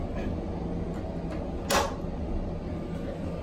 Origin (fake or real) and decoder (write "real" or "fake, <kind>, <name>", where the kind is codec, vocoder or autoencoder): real